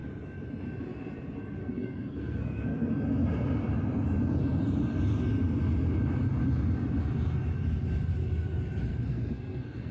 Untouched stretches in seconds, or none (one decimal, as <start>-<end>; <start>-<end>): 0.0-1.6; 2.9-8.9